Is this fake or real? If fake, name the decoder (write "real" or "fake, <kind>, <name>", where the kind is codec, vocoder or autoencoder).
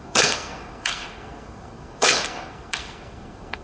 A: fake, codec, SNAC